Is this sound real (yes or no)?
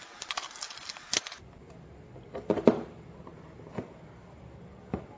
yes